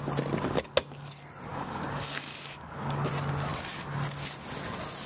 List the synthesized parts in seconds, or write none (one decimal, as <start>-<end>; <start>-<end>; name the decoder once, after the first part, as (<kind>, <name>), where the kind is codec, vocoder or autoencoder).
1.5-3.1 (codec, DAC)